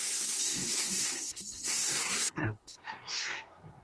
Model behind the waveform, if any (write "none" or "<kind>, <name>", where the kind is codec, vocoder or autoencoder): codec, SNAC